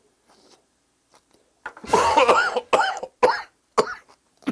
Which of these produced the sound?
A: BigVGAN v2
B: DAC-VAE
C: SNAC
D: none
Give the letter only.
D